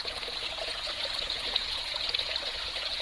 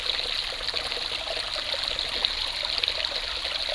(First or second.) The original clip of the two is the second